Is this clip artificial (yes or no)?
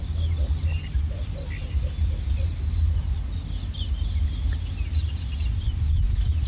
no